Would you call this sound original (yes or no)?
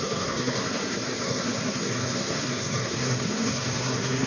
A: no